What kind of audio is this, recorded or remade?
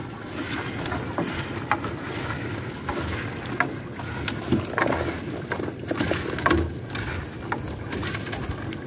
recorded